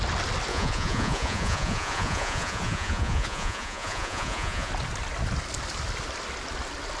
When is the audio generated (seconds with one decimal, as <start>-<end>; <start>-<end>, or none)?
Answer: 0.5-4.7